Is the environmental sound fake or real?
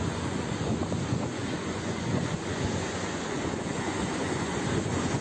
fake